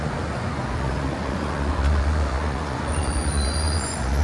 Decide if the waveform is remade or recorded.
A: remade